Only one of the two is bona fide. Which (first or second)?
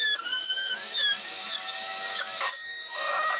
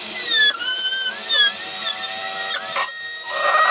second